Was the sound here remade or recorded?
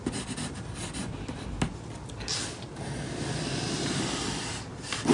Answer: recorded